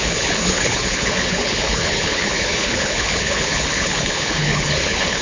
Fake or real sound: fake